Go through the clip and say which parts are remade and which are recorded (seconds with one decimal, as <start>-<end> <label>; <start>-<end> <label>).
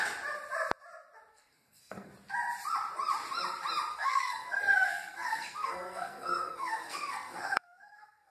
0.0-1.3 recorded; 1.3-2.1 remade; 2.1-3.9 recorded; 3.9-8.3 remade